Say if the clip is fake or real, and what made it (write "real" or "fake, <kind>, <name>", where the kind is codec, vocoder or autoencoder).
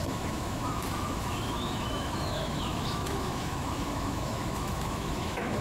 fake, autoencoder, DAC-VAE